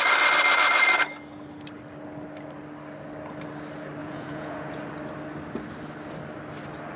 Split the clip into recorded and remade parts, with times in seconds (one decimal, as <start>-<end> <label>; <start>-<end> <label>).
0.0-4.0 recorded; 4.0-4.9 remade; 4.9-7.0 recorded